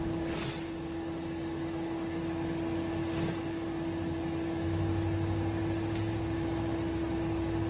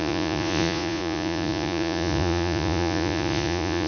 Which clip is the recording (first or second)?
first